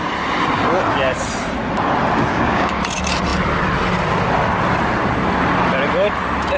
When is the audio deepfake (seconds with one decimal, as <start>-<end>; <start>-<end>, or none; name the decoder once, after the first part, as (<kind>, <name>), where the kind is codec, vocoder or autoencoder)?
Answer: 2.3-2.8 (codec, DAC)